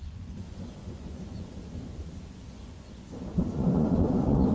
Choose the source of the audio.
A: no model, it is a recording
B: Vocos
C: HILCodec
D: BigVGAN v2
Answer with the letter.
B